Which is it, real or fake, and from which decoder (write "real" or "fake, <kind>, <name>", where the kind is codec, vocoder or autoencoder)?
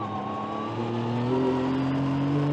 real